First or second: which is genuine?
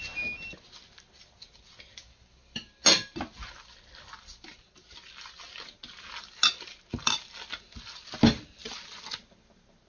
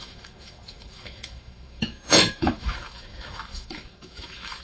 first